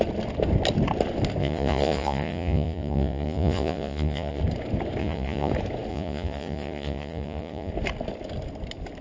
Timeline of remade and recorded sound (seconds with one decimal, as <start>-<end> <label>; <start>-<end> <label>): 0.0-1.4 recorded; 1.4-4.4 remade; 4.4-5.0 recorded; 5.0-5.5 remade; 5.5-5.9 recorded; 5.9-7.7 remade; 7.7-9.0 recorded